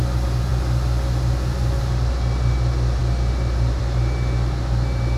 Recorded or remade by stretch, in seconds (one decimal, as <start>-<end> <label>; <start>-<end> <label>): 0.0-5.2 recorded